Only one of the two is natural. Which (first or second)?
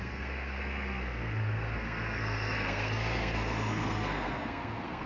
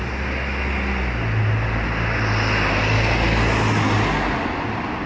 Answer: second